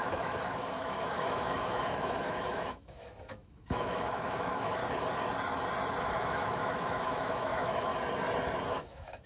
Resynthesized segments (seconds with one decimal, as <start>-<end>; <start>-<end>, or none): 0.0-4.8; 6.0-7.9; 8.7-9.3